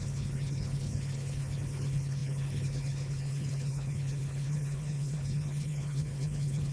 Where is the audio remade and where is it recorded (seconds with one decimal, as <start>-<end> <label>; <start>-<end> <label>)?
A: 0.0-6.7 remade